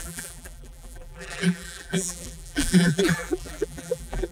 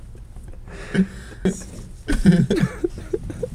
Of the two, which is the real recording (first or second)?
second